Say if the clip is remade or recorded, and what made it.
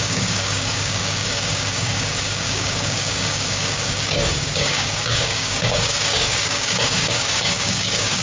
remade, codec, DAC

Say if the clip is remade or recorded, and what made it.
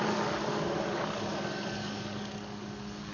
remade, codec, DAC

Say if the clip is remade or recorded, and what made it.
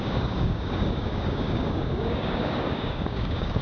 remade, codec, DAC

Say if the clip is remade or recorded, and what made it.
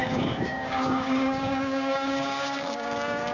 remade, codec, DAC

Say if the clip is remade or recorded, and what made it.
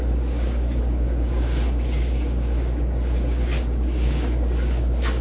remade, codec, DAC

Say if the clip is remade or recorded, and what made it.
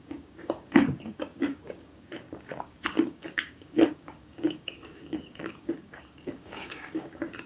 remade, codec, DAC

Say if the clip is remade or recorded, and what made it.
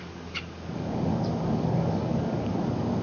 remade, codec, DAC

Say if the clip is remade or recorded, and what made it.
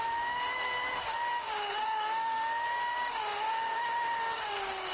remade, codec, DAC